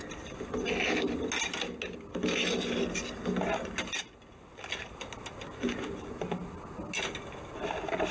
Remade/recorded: recorded